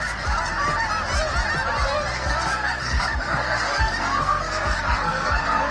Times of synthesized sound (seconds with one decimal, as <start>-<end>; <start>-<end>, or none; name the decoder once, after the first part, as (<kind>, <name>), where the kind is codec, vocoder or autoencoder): 2.1-5.7 (codec, SNAC)